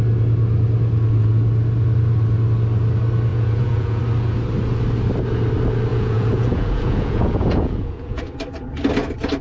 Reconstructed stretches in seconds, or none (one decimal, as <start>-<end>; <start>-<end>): 3.3-4.0; 5.9-8.2